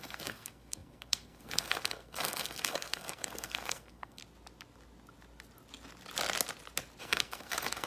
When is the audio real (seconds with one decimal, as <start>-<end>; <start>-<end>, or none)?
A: 4.2-7.0